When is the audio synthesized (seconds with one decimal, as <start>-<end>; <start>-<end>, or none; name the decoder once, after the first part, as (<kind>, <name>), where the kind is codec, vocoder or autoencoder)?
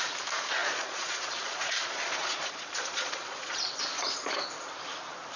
0.6-3.8 (vocoder, Vocos)